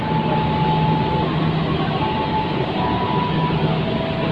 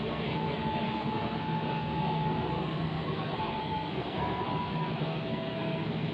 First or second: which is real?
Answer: first